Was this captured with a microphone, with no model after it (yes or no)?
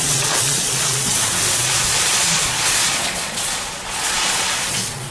no